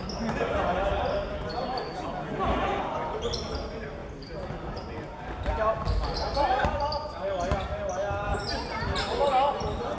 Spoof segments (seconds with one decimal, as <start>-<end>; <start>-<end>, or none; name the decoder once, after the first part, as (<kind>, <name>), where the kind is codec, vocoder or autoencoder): 4.0-5.7 (vocoder, BigVGAN v2)